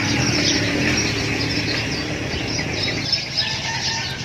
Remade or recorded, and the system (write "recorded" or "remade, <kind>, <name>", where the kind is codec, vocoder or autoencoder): recorded